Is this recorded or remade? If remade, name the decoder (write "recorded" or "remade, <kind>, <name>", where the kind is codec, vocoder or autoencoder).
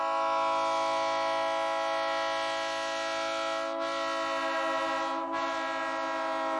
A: recorded